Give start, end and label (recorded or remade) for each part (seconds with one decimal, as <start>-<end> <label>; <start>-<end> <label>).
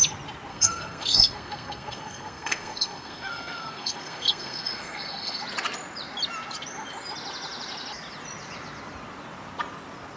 0.0-0.5 recorded; 0.5-5.4 remade; 5.4-10.2 recorded